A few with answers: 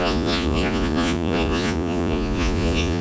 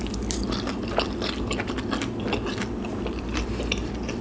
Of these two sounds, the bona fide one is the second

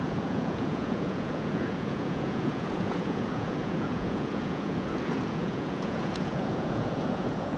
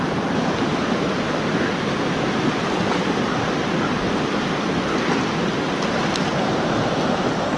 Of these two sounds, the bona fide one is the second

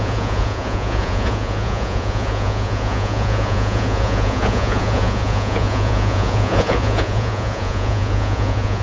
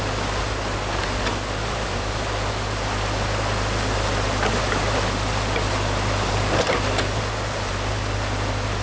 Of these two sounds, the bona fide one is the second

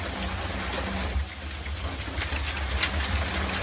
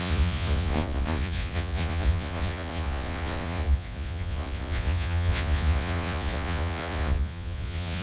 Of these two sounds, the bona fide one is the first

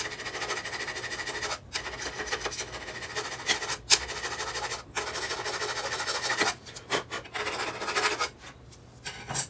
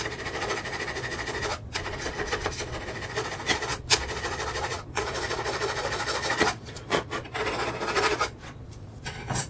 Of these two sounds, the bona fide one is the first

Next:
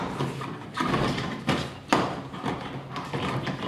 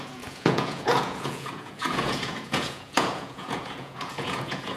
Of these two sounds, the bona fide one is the first